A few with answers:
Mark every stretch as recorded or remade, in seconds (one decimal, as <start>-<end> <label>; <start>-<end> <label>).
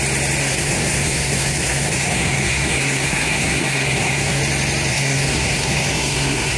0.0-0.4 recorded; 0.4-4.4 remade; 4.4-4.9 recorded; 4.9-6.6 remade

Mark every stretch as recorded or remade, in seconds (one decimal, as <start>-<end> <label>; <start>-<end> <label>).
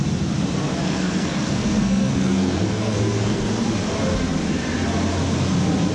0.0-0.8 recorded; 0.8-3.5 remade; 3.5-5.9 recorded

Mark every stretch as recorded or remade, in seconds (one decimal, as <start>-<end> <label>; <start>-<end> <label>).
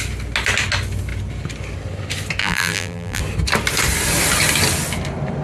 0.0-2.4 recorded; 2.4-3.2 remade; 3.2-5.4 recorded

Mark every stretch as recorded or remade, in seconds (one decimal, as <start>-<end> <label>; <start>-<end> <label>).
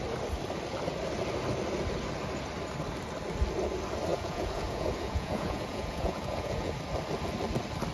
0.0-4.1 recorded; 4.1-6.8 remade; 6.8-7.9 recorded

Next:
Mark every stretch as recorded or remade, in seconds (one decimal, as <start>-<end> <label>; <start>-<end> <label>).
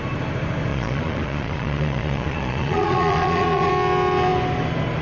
0.0-0.7 recorded; 0.7-3.7 remade; 3.7-5.0 recorded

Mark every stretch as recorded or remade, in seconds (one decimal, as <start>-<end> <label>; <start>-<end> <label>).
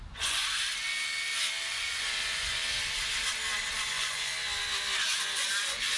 0.0-0.4 remade; 0.4-1.7 recorded; 1.7-2.6 remade; 2.6-3.8 recorded; 3.8-4.3 remade; 4.3-5.2 recorded; 5.2-6.0 remade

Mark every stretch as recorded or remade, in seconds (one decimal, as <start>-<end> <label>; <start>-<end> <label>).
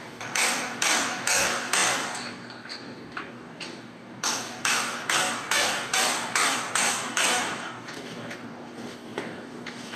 0.0-10.0 remade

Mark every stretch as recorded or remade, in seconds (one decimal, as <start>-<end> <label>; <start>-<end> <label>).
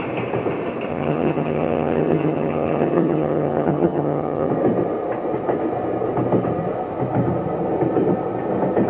0.0-0.9 recorded; 0.9-4.5 remade; 4.5-8.9 recorded